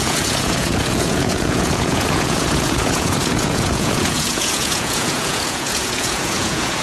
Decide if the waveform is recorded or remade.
remade